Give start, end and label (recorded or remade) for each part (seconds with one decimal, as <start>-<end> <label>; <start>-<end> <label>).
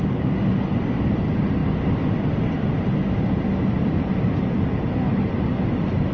0.0-6.1 recorded